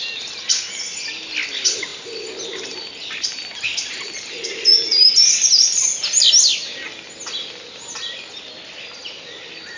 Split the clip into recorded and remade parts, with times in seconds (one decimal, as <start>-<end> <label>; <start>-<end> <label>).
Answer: 0.0-9.8 recorded